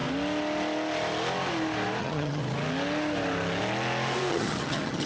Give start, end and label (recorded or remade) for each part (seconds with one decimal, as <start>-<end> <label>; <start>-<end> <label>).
0.0-2.0 recorded; 2.0-2.4 remade; 2.4-4.3 recorded; 4.3-5.1 remade